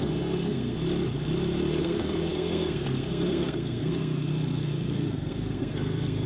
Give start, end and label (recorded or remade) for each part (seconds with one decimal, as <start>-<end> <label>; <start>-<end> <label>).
0.0-0.8 remade; 0.8-1.8 recorded; 1.8-6.3 remade